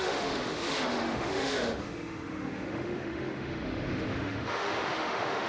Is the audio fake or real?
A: fake